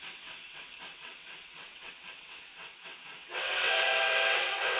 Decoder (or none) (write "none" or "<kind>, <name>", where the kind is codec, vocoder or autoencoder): vocoder, WaveNeXt